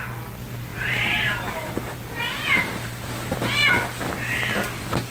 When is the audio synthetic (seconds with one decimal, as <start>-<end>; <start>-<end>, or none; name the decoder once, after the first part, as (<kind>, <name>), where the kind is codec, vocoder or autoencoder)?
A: 0.7-3.7 (vocoder, BigVGAN v2)